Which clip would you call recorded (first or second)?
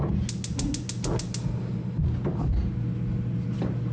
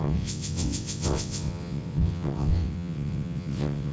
first